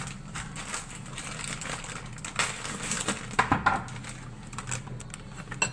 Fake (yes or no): no